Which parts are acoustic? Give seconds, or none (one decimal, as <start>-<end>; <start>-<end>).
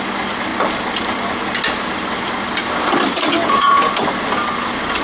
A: 0.0-3.4; 3.9-5.0